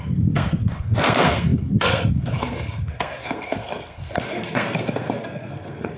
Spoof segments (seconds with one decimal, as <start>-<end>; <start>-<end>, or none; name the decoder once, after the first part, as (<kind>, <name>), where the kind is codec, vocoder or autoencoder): 0.0-6.0 (codec, SNAC)